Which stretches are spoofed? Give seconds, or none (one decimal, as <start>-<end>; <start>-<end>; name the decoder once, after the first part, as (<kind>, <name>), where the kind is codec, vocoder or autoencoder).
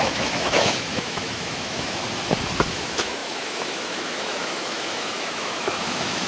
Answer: 0.0-2.0 (autoencoder, DAC-VAE); 2.7-6.3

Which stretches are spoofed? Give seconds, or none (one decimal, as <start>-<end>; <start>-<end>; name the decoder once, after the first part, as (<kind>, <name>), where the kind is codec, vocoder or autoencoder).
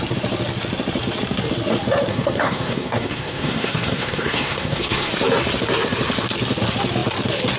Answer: 2.1-5.1 (codec, SNAC)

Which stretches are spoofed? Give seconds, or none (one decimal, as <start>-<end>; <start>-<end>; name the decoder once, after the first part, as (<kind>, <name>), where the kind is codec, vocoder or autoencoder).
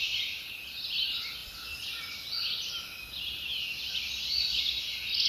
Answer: none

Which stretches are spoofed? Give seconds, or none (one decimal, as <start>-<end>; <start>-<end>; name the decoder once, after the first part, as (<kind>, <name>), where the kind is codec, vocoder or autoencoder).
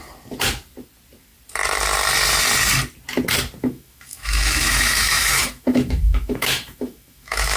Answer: 3.6-7.6 (autoencoder, DAC-VAE)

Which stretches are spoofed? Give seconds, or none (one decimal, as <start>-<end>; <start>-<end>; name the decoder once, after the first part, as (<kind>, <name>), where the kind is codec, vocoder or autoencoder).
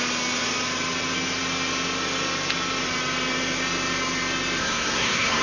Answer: 4.6-5.4 (codec, SNAC)